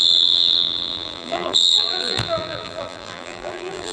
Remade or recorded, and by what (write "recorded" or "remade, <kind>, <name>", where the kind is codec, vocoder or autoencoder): remade, vocoder, BigVGAN v2